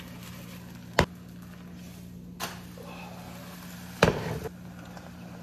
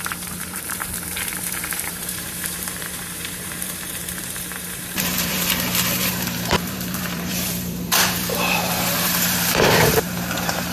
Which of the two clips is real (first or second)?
first